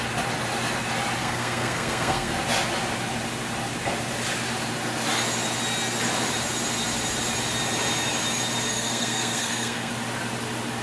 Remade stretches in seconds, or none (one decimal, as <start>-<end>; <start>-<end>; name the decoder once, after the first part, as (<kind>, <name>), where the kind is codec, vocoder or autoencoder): 1.2-2.3 (codec, SNAC); 8.7-9.9